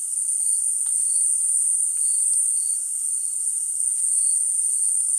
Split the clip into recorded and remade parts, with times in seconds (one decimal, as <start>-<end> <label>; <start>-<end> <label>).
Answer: 0.0-5.2 recorded